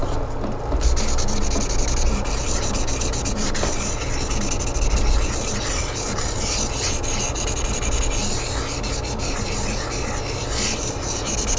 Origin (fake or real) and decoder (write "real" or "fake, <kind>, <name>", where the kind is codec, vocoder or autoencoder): real